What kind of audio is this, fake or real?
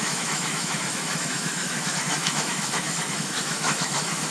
fake